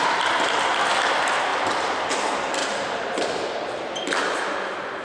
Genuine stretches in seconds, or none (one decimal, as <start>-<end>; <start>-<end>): 0.0-1.5; 2.1-2.6; 3.8-5.0